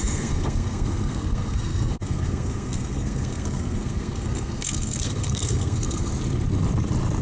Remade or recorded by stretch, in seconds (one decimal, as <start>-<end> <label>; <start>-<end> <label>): 0.0-6.1 remade; 6.1-7.2 recorded